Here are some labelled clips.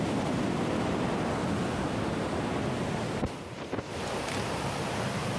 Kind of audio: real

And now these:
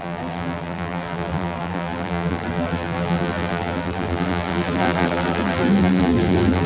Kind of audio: fake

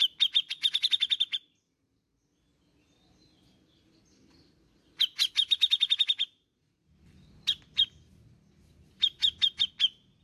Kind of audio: real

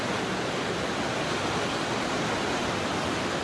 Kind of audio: real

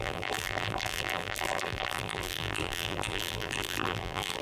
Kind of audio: fake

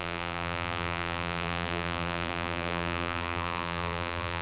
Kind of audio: fake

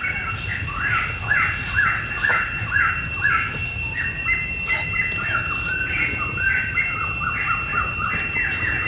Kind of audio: real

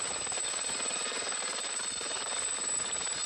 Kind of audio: fake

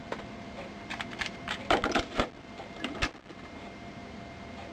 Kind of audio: fake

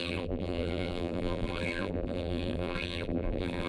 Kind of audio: fake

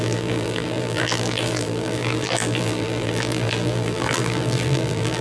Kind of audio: fake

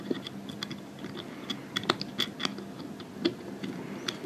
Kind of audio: real